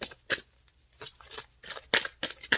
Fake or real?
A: real